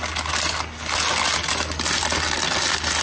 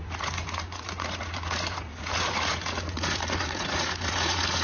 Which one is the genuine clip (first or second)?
first